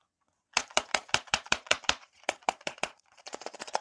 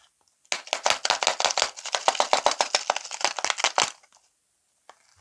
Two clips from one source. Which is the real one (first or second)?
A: second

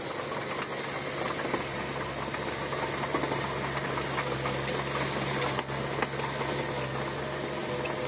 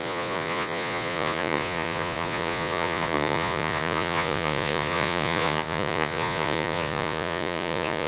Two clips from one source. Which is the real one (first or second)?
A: first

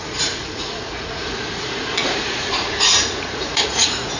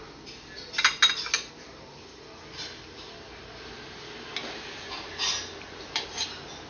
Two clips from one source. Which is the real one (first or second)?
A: second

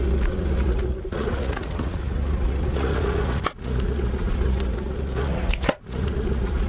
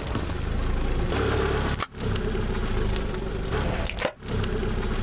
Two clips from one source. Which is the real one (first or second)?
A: second